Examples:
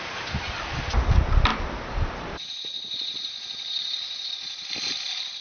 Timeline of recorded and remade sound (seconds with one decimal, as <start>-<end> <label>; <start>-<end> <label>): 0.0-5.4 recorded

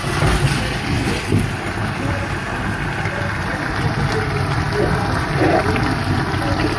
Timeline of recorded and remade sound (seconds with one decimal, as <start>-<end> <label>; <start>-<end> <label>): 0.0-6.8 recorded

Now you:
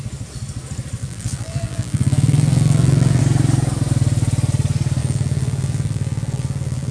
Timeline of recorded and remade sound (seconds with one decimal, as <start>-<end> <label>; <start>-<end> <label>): 0.0-1.0 recorded; 1.0-3.2 remade; 3.2-5.0 recorded; 5.0-6.9 remade

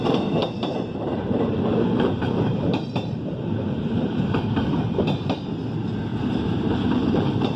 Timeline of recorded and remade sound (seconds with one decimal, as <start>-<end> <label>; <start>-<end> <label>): 0.0-0.4 recorded; 0.4-4.8 remade; 4.8-6.1 recorded; 6.1-7.6 remade